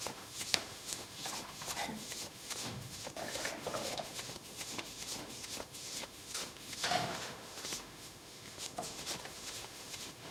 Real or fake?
fake